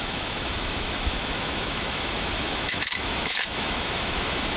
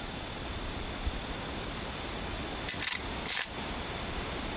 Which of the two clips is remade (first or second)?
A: first